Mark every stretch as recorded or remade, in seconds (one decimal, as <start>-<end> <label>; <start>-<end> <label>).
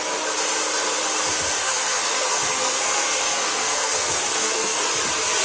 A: 0.0-1.6 recorded; 1.6-4.8 remade; 4.8-5.4 recorded